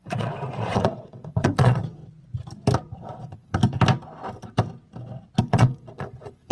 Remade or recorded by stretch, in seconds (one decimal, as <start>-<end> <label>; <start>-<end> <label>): 0.0-2.0 remade; 2.0-3.0 recorded; 3.0-3.6 remade; 3.6-5.4 recorded; 5.4-6.5 remade